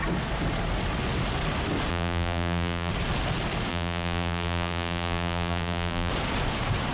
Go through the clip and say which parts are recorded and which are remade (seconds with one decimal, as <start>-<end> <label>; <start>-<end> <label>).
0.0-1.9 recorded; 1.9-2.9 remade; 2.9-3.7 recorded; 3.7-6.1 remade; 6.1-6.9 recorded

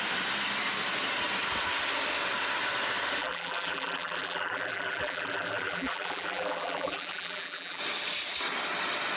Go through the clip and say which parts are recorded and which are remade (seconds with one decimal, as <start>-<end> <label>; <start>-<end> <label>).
0.0-3.2 recorded; 3.2-7.8 remade; 7.8-9.2 recorded

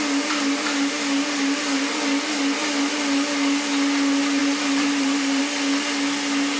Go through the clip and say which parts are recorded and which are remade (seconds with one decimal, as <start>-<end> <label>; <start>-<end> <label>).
0.0-4.4 recorded; 4.4-5.4 remade; 5.4-6.6 recorded

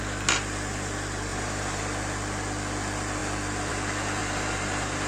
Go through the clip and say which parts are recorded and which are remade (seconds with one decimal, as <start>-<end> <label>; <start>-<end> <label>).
0.0-1.3 recorded; 1.3-1.8 remade; 1.8-4.2 recorded; 4.2-5.1 remade

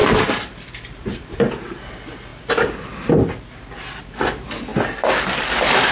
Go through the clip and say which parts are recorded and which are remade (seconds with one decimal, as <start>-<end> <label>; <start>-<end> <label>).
0.0-5.9 recorded

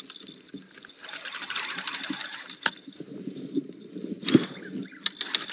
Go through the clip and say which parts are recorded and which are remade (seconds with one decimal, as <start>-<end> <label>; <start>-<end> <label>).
0.0-1.0 recorded; 1.0-1.7 remade; 1.7-2.2 recorded; 2.2-4.6 remade; 4.6-5.5 recorded

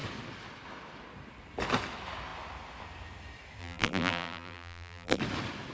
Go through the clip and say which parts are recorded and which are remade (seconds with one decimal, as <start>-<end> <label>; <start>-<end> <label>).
0.0-3.6 recorded; 3.6-5.2 remade; 5.2-5.7 recorded

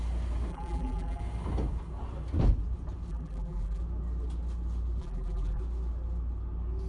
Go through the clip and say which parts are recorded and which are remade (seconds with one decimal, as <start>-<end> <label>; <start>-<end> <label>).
0.0-0.5 recorded; 0.5-1.2 remade; 1.2-3.1 recorded; 3.1-3.8 remade; 3.8-5.0 recorded; 5.0-5.6 remade; 5.6-6.9 recorded